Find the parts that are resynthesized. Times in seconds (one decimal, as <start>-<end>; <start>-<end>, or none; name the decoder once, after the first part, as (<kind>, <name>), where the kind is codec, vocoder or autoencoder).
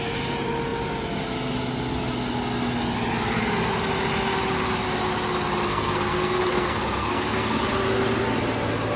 5.7-7.6 (codec, SNAC)